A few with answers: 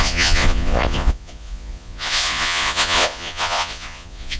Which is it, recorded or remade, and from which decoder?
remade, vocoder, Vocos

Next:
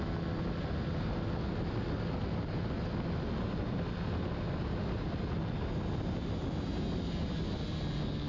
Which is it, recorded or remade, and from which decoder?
recorded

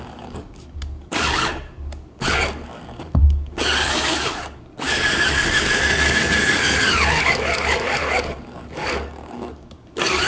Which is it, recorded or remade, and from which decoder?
remade, codec, DAC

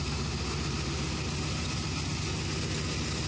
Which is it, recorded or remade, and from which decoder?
recorded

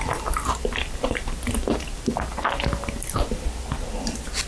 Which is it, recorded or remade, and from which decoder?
recorded